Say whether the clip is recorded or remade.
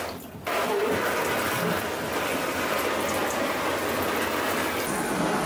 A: recorded